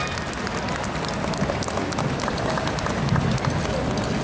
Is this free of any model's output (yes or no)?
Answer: yes